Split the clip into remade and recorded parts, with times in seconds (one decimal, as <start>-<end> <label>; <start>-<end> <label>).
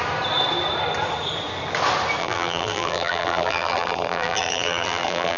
0.0-2.2 recorded; 2.2-5.4 remade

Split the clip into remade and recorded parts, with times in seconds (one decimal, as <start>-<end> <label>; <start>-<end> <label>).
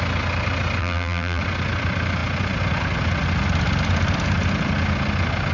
0.0-0.8 recorded; 0.8-1.4 remade; 1.4-5.5 recorded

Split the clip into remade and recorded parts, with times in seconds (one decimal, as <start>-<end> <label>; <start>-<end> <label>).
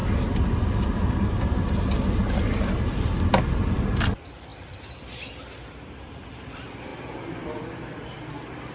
0.0-2.7 recorded; 2.7-8.7 remade